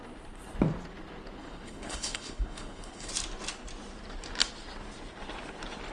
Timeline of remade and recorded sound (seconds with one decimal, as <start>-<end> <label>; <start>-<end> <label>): 0.0-1.4 recorded; 1.4-3.1 remade; 3.1-5.9 recorded